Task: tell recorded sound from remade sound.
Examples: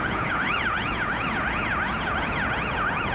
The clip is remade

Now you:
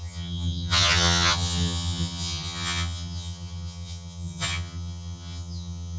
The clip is remade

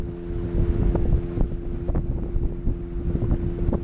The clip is recorded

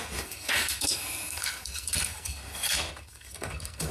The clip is remade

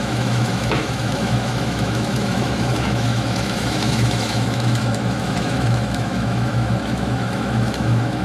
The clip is remade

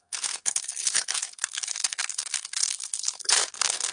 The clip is remade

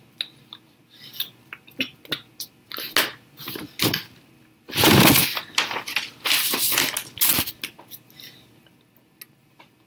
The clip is recorded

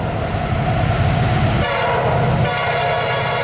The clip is recorded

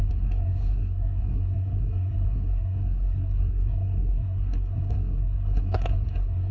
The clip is remade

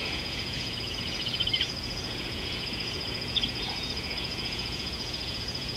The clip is remade